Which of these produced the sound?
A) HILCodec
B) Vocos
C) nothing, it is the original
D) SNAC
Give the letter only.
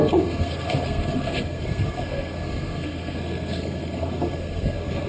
D